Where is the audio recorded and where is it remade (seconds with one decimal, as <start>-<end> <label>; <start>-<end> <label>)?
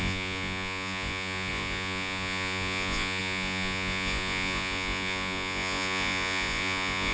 0.0-7.1 remade